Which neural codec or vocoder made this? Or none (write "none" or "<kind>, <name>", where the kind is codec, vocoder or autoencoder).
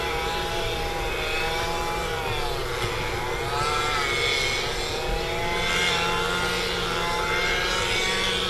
none